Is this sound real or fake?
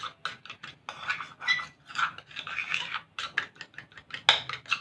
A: real